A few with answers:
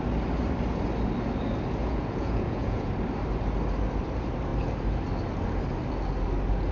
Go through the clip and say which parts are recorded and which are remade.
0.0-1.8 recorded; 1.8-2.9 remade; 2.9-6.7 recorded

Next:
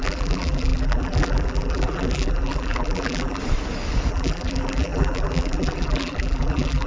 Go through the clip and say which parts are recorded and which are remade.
0.0-3.4 remade; 3.4-4.1 recorded; 4.1-6.9 remade

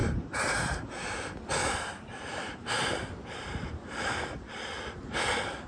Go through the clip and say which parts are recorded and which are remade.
0.0-1.0 remade; 1.0-1.6 recorded; 1.6-5.0 remade; 5.0-5.7 recorded